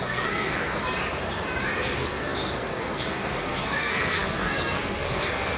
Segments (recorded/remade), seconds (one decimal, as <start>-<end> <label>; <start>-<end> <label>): 0.0-0.8 remade; 0.8-1.8 recorded; 1.8-5.6 remade